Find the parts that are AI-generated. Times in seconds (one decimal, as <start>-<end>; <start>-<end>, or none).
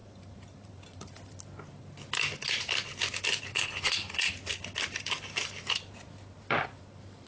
3.5-4.3